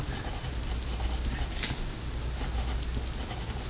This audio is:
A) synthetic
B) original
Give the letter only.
B